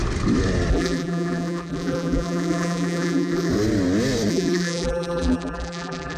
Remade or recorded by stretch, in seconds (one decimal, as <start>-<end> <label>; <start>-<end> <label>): 0.0-0.7 recorded; 0.7-3.5 remade; 3.5-4.3 recorded; 4.3-6.2 remade